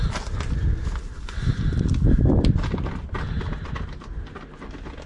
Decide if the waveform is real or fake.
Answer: real